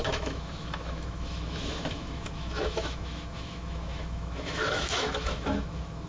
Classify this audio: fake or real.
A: fake